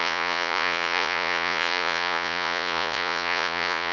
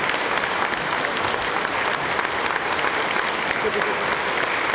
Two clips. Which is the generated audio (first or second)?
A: first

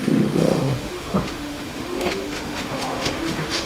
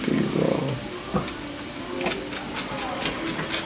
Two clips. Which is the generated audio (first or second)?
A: first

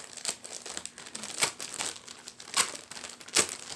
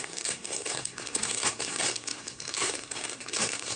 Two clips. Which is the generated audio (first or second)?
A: second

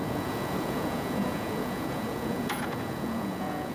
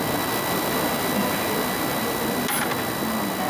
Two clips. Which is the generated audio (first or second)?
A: first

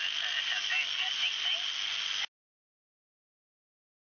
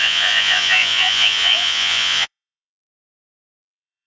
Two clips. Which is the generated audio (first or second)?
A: second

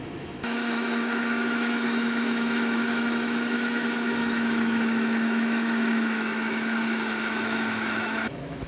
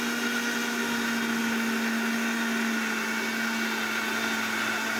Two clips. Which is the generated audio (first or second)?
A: first